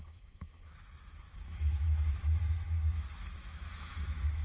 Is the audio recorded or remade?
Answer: remade